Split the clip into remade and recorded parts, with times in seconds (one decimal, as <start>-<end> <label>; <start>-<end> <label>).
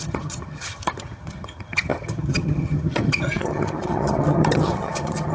0.0-5.3 remade